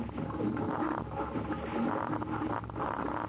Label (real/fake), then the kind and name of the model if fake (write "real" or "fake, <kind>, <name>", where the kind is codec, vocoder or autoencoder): real